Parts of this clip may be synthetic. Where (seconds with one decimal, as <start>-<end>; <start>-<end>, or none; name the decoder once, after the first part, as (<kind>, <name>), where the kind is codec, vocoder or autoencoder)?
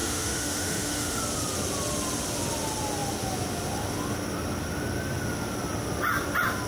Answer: 0.0-1.2 (autoencoder, DAC-VAE)